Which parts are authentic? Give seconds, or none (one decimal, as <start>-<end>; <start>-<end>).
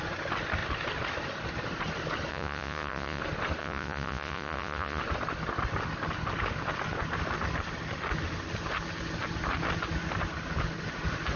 0.0-2.3; 3.2-3.6; 5.0-11.4